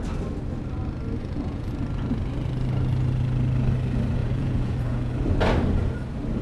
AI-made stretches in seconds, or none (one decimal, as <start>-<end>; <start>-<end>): 1.2-1.7; 4.2-5.1

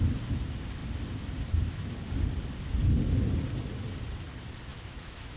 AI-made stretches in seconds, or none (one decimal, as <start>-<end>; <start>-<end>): 4.7-5.4

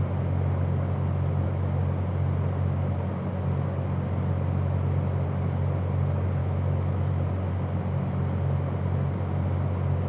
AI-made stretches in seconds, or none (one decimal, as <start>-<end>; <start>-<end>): 6.4-7.1

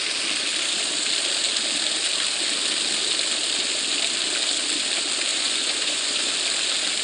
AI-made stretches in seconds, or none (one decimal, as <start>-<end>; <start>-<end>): 5.3-6.3

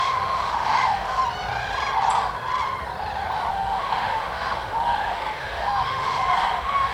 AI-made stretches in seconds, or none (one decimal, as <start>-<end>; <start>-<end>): 0.0-1.2; 3.5-6.9